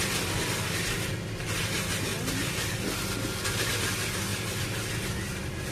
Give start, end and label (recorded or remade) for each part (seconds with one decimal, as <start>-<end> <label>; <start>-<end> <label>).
0.0-5.7 recorded